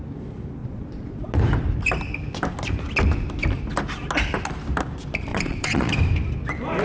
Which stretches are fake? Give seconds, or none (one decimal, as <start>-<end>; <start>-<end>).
0.6-1.3; 5.3-5.9